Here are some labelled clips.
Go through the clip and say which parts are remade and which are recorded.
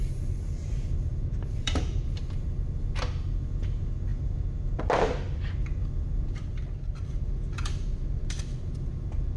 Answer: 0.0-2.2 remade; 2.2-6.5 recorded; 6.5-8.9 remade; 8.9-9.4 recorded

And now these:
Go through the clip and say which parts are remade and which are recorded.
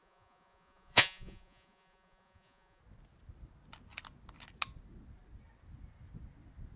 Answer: 0.0-2.8 remade; 2.8-6.8 recorded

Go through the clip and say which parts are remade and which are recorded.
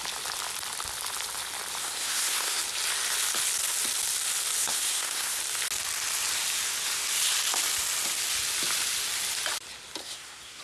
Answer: 0.0-1.8 recorded; 1.8-2.6 remade; 2.6-4.6 recorded; 4.6-5.4 remade; 5.4-10.0 recorded; 10.0-10.6 remade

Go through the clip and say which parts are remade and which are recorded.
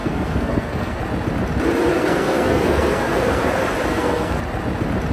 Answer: 0.0-1.0 remade; 1.0-1.9 recorded; 1.9-3.5 remade; 3.5-3.9 recorded; 3.9-4.4 remade; 4.4-5.1 recorded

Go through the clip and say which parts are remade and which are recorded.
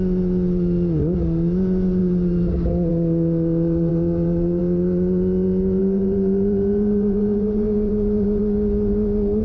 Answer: 0.0-5.8 recorded; 5.8-8.4 remade; 8.4-9.4 recorded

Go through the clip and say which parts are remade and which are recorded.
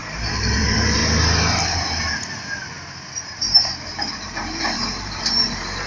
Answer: 0.0-1.0 remade; 1.0-3.6 recorded; 3.6-5.9 remade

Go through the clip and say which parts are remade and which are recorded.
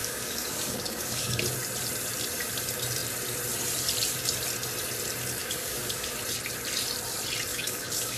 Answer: 0.0-1.4 remade; 1.4-5.4 recorded; 5.4-6.2 remade; 6.2-7.5 recorded; 7.5-8.2 remade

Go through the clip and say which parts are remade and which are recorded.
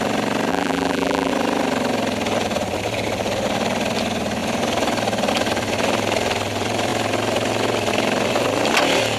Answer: 0.0-0.5 recorded; 0.5-1.3 remade; 1.3-9.2 recorded